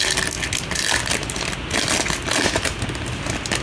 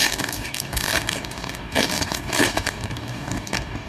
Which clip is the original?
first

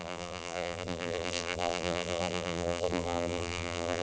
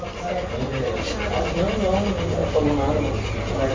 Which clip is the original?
second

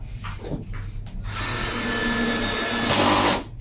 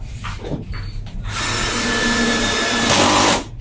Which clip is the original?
first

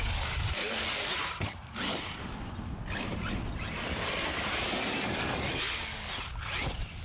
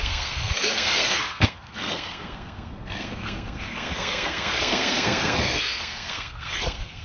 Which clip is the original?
first